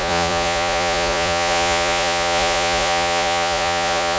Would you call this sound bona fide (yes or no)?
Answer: no